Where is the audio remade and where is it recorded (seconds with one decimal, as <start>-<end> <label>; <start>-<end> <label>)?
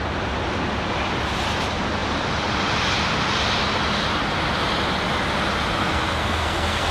0.0-5.8 recorded; 5.8-6.9 remade